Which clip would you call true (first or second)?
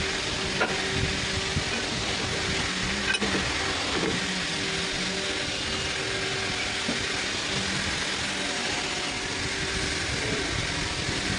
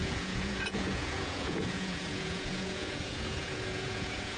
first